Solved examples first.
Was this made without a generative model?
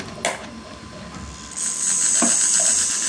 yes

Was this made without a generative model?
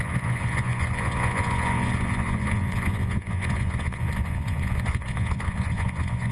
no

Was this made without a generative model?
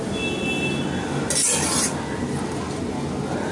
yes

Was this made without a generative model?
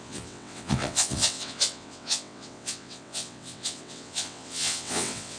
no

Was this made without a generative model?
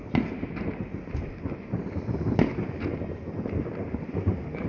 yes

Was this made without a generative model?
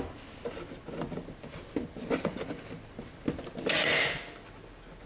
yes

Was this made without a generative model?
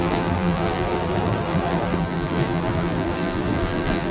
no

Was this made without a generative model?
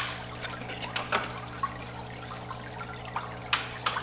yes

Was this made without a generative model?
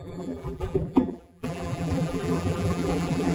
no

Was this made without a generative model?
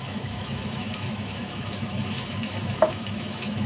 no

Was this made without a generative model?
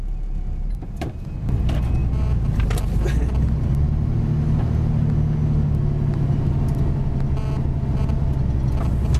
yes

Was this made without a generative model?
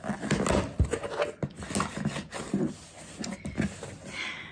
yes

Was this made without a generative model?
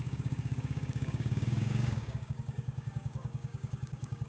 no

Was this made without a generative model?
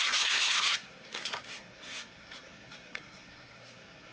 no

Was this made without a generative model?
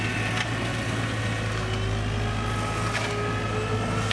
yes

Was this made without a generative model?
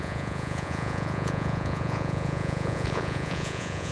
no